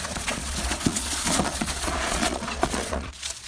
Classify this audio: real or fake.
fake